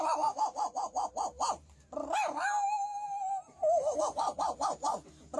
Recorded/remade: recorded